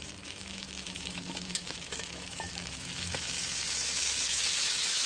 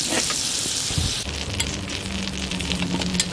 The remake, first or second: first